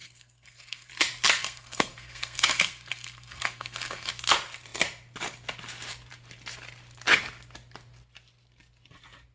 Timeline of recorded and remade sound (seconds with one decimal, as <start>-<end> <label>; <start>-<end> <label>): 0.0-0.9 remade; 0.9-1.4 recorded; 1.4-4.1 remade; 4.1-9.3 recorded

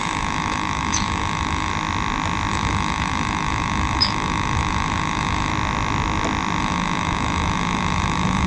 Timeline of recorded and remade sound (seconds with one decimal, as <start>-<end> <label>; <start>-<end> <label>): 0.0-1.7 remade; 1.7-2.5 recorded; 2.5-5.5 remade; 5.5-6.6 recorded; 6.6-8.5 remade

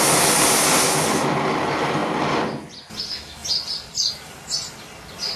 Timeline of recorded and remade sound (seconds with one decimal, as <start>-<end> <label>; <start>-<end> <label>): 0.0-3.4 recorded; 3.4-4.1 remade; 4.1-5.4 recorded

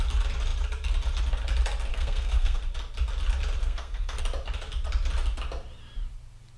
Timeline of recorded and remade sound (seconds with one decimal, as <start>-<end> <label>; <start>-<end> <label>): 0.0-1.9 recorded; 1.9-2.6 remade; 2.6-3.6 recorded; 3.6-4.2 remade; 4.2-6.6 recorded